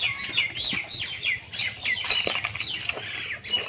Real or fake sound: real